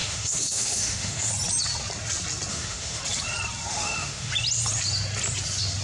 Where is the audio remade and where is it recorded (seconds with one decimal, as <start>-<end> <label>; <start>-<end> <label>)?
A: 0.0-1.3 remade; 1.3-2.5 recorded; 2.5-3.0 remade; 3.0-3.7 recorded; 3.7-4.3 remade; 4.3-5.8 recorded